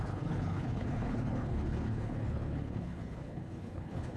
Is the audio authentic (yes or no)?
no